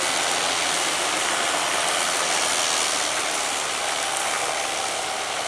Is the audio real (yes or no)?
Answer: yes